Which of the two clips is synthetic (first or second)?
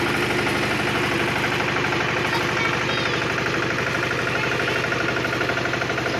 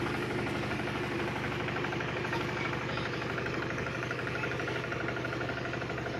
second